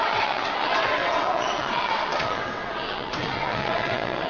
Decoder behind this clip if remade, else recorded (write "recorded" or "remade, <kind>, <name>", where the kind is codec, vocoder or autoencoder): remade, vocoder, WaveNeXt